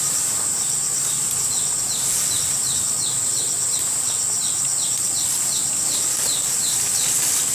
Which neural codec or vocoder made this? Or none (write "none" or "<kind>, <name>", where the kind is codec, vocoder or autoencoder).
none